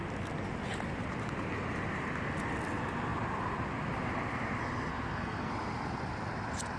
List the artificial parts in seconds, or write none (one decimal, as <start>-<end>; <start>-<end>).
4.9-5.5